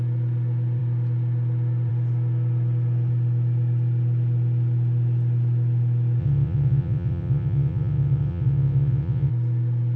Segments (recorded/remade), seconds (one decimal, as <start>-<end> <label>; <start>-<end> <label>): 0.0-6.2 recorded; 6.2-9.3 remade; 9.3-10.0 recorded